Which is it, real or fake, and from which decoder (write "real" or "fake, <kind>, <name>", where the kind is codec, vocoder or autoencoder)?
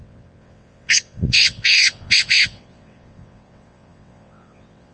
fake, vocoder, WaveNeXt